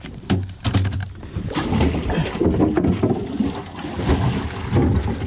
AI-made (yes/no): no